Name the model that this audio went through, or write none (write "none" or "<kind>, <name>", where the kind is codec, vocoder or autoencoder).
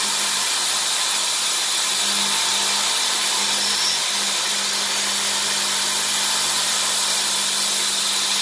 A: none